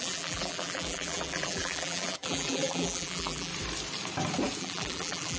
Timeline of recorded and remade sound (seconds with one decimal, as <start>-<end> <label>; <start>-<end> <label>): 0.0-3.5 remade; 3.5-4.6 recorded; 4.6-5.4 remade